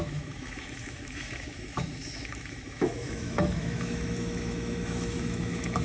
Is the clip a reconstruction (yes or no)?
yes